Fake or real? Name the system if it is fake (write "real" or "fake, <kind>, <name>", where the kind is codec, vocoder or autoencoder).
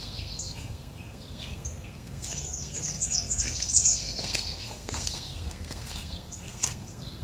fake, codec, SNAC